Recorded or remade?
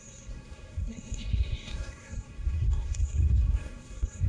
remade